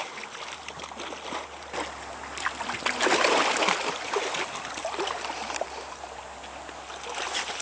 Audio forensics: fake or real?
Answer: real